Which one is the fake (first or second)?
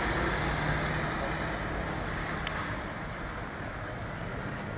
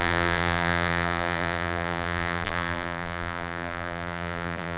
second